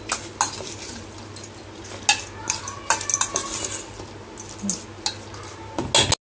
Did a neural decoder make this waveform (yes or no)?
no